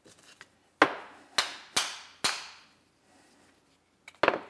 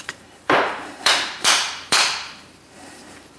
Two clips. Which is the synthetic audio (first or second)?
second